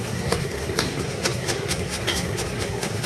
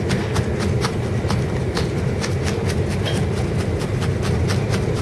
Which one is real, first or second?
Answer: second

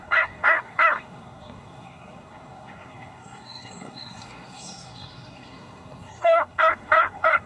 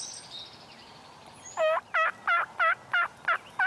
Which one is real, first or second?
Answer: second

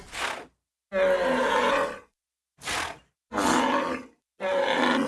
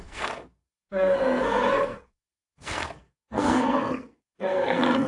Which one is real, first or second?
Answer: first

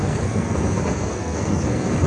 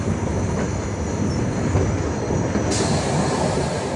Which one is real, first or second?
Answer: second